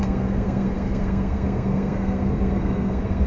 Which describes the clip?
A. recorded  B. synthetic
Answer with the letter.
B